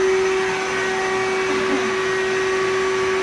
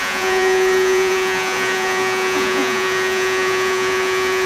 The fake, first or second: second